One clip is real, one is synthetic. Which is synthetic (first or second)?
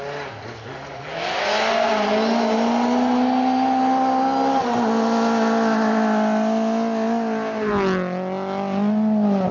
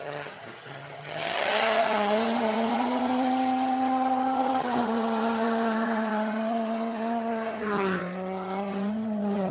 second